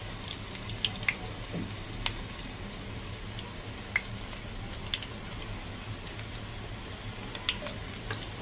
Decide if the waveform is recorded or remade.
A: recorded